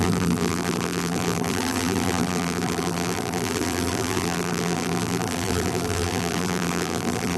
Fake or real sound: fake